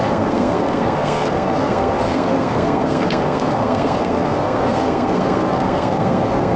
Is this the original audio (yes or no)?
no